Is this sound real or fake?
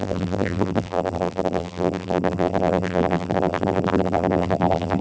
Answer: fake